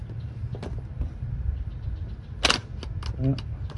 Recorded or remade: recorded